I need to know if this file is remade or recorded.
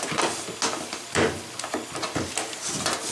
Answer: recorded